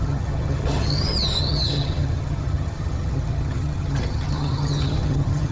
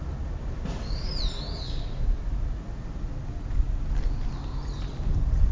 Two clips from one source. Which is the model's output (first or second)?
first